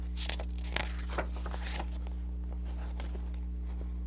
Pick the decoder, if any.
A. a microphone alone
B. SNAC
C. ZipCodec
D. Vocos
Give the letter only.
A